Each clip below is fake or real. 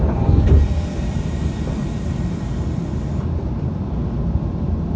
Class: real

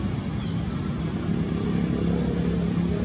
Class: real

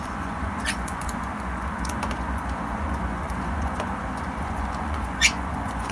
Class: fake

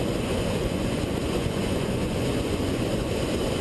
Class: fake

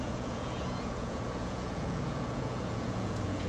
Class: fake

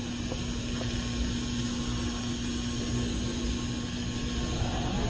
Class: real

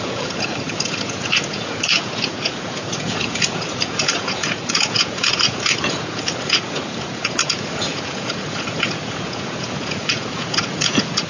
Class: fake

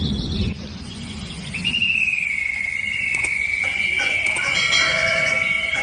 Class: fake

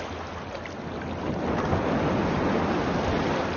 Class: real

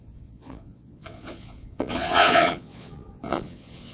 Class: fake